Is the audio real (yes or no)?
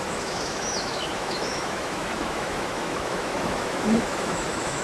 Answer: no